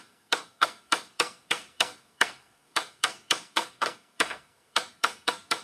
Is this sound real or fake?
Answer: fake